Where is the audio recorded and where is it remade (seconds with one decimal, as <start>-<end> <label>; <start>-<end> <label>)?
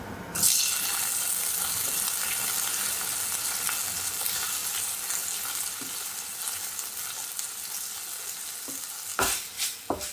0.0-10.1 recorded